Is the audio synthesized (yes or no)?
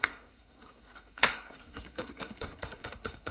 yes